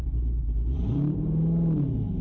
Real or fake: real